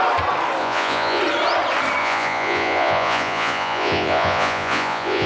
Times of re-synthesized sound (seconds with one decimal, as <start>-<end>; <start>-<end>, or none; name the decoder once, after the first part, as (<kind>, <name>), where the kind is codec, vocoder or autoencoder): 0.6-1.2 (vocoder, Vocos); 2.0-5.3